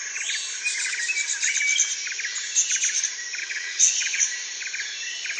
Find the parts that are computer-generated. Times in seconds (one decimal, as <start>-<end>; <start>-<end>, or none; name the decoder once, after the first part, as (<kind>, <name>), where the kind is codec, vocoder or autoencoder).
3.4-4.2 (vocoder, WaveNeXt)